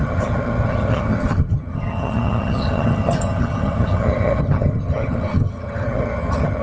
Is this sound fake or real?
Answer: fake